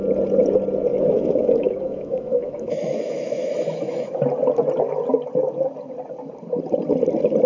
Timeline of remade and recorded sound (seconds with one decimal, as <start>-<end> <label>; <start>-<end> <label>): 0.0-0.9 recorded; 0.9-4.2 remade; 4.2-7.5 recorded